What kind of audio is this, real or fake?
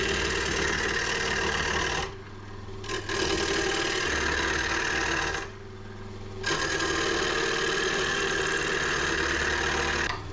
real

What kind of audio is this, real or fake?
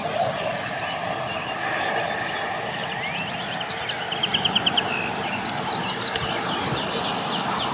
real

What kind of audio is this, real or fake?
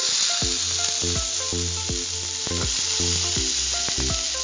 real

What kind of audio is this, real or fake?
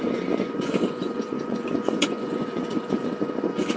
fake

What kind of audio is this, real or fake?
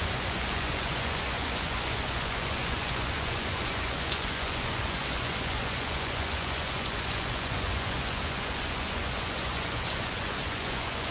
fake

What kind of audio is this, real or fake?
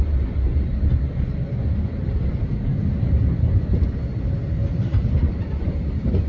real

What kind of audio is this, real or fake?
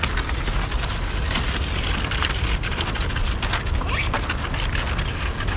real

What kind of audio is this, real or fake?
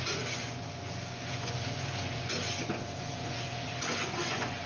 fake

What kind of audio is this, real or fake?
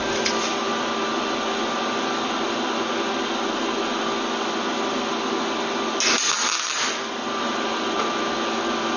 real